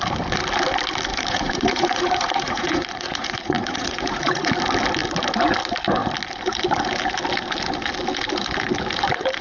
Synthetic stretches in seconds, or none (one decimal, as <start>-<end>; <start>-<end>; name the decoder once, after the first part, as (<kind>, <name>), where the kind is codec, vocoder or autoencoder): 1.1-4.5 (vocoder, Vocos)